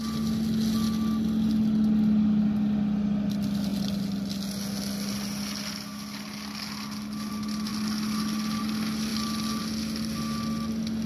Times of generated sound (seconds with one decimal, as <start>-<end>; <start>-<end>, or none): none

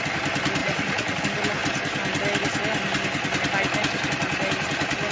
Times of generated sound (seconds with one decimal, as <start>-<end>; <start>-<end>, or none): 0.6-1.2